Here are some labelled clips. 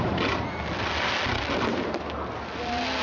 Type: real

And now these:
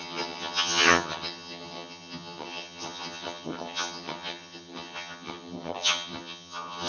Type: fake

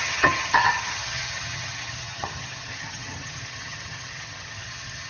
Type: fake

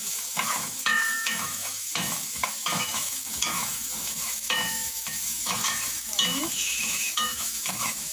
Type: fake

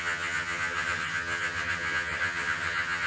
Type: fake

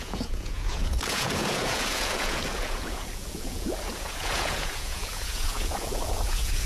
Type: fake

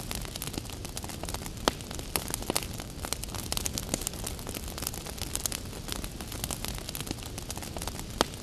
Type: real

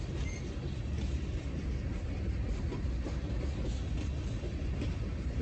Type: real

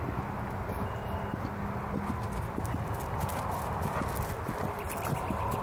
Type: real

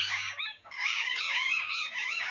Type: fake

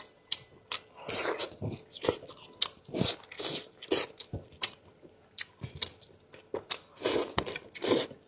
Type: real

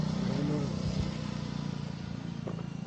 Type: real